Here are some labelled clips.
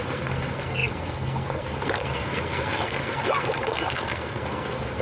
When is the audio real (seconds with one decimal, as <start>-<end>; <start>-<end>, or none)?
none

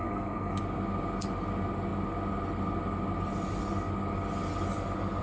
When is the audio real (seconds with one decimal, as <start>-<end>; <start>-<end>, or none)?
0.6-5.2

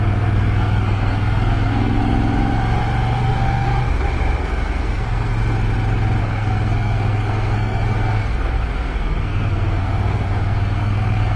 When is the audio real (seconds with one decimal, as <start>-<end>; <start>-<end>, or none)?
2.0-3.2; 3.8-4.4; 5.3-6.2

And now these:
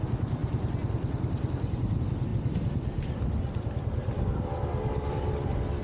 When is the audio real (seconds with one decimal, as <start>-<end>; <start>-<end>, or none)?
0.0-5.8